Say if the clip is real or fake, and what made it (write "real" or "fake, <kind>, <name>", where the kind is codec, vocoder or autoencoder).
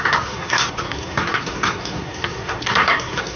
fake, codec, SNAC